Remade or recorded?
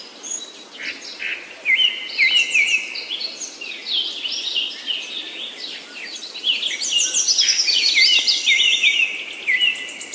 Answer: recorded